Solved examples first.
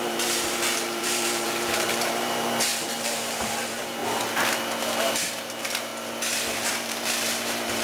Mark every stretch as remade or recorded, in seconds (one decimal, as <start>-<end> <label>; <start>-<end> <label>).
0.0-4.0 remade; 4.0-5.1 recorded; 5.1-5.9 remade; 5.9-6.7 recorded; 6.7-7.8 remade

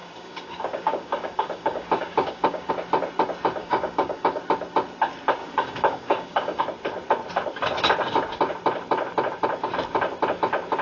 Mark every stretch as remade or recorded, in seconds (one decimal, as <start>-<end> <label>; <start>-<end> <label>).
0.0-2.7 remade; 2.7-3.6 recorded; 3.6-4.4 remade; 4.4-5.4 recorded; 5.4-6.6 remade; 6.6-10.8 recorded

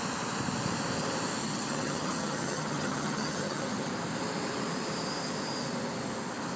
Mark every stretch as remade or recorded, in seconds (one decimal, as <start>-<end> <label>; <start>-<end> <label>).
0.0-1.4 recorded; 1.4-3.9 remade; 3.9-6.6 recorded

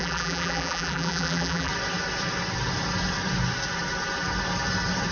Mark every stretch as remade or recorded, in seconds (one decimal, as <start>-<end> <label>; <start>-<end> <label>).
0.0-1.7 remade; 1.7-5.1 recorded